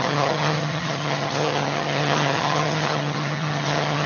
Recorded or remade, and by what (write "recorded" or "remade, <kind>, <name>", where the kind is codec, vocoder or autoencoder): remade, vocoder, HiFi-GAN